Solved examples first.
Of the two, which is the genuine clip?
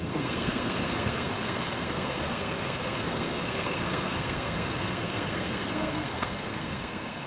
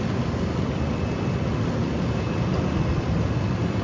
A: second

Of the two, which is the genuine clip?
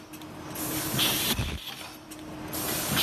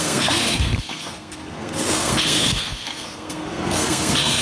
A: first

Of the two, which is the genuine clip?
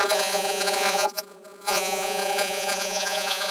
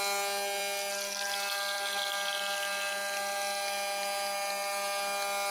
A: second